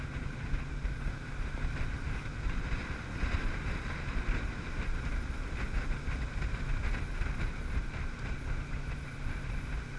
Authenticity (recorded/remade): recorded